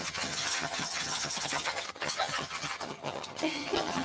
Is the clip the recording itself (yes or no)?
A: no